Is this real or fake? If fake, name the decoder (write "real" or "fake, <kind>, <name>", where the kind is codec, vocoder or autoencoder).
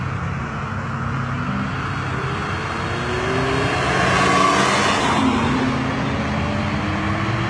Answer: real